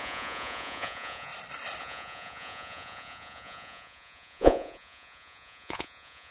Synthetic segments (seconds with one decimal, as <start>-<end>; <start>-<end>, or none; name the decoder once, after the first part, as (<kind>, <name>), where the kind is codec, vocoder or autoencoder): 0.0-1.3 (vocoder, Vocos); 1.8-6.3

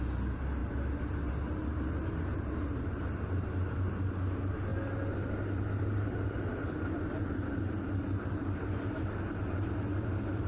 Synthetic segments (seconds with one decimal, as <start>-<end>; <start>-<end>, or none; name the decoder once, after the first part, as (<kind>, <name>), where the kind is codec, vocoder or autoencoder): 4.7-8.9 (vocoder, BigVGAN v2)

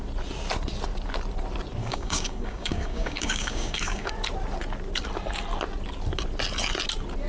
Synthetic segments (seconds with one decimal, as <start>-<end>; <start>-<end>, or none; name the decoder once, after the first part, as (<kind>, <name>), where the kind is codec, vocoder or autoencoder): 1.8-4.1 (codec, DAC)

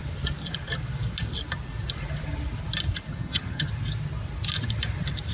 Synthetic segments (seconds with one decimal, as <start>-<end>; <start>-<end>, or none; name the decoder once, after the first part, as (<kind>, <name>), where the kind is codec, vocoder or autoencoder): 3.1-3.7 (vocoder, HiFi-GAN)

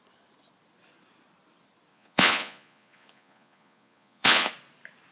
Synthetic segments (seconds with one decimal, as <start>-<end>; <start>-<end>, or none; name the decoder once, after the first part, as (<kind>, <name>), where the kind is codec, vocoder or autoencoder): 1.9-4.5 (vocoder, Vocos)

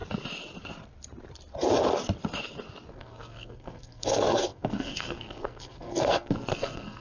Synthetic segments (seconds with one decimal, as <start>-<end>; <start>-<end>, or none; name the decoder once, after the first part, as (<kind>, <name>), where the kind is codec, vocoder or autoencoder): 2.9-7.0 (codec, SNAC)

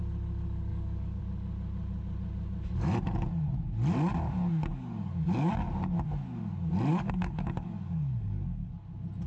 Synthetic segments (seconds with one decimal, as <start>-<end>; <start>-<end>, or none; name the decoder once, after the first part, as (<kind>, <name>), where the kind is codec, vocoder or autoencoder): 0.7-1.2 (codec, DAC); 4.7-5.5; 6.9-8.7

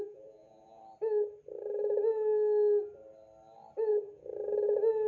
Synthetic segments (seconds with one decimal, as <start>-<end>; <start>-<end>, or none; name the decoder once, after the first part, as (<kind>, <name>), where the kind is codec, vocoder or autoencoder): 0.0-0.8 (vocoder, Vocos); 3.9-4.3